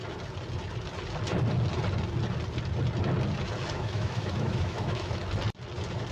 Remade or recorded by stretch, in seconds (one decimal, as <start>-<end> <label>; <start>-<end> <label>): 0.0-3.7 recorded; 3.7-5.2 remade; 5.2-6.1 recorded